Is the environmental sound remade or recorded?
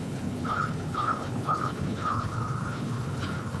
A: remade